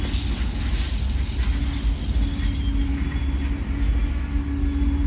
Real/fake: real